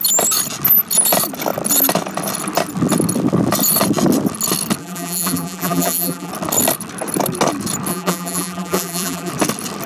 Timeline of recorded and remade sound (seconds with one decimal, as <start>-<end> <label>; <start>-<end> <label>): 0.0-4.8 recorded; 4.8-6.3 remade; 6.3-7.9 recorded; 7.9-9.3 remade; 9.3-9.9 recorded